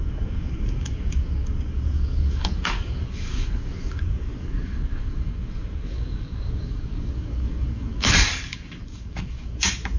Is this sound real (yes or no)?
no